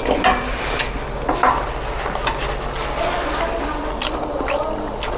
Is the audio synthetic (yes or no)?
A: no